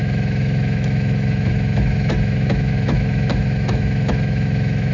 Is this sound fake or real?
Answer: fake